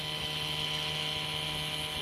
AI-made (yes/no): no